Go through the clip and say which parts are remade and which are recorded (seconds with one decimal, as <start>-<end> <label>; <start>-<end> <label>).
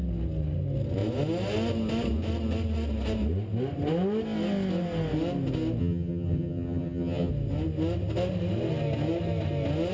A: 0.0-5.8 recorded; 5.8-7.3 remade; 7.3-9.9 recorded